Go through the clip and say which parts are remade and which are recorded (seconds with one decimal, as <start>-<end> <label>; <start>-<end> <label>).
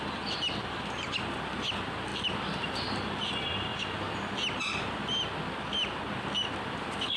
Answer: 0.0-3.7 remade; 3.7-7.2 recorded